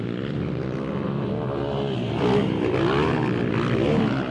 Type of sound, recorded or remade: recorded